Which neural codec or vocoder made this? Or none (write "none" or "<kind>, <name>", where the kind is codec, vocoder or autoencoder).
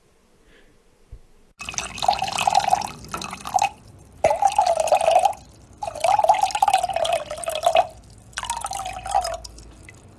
none